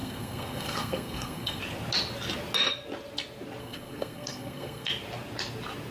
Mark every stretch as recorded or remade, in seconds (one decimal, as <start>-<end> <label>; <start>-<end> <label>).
0.0-1.6 remade; 1.6-3.6 recorded; 3.6-4.9 remade; 4.9-5.9 recorded